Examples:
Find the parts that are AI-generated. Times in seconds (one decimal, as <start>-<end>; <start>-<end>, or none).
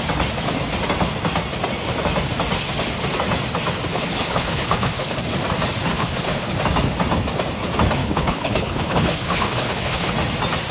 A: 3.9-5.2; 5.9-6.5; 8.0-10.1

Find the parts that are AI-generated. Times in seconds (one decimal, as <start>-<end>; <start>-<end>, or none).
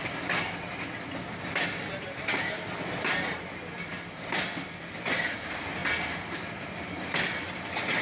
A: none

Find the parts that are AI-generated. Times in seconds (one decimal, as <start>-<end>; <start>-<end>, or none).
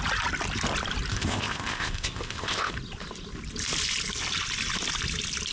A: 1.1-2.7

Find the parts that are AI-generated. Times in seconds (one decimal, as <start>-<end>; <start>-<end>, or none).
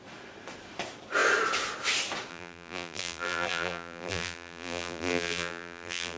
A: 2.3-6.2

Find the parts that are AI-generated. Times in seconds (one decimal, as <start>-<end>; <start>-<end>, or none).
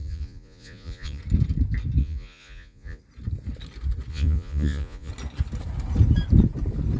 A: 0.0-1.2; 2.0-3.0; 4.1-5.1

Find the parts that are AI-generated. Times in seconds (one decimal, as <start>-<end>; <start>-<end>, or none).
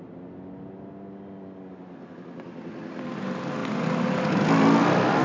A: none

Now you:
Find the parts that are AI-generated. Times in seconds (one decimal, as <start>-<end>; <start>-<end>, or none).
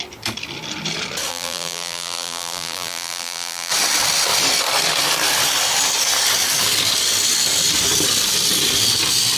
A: 1.3-3.7